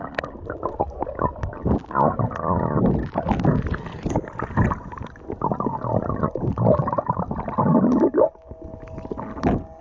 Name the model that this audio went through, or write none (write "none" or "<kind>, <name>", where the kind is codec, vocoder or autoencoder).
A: none